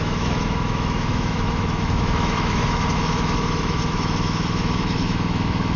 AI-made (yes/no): yes